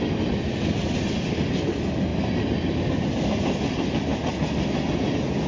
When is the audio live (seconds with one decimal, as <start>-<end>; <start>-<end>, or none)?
0.0-5.5